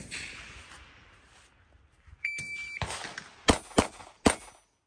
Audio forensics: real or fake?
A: real